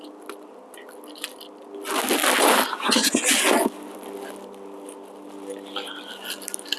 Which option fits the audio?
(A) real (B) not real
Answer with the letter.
A